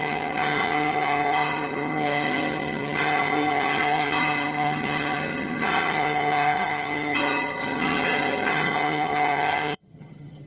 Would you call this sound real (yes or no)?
no